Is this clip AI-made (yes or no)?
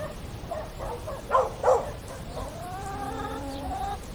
yes